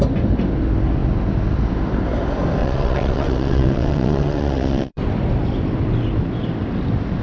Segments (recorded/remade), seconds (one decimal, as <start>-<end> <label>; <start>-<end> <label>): 0.0-2.6 recorded; 2.6-5.0 remade; 5.0-7.2 recorded